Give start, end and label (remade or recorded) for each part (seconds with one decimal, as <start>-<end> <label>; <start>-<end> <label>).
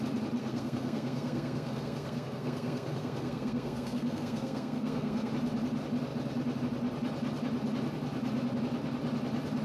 0.0-0.4 recorded; 0.4-5.3 remade; 5.3-9.6 recorded